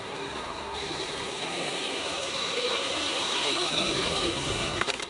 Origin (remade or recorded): remade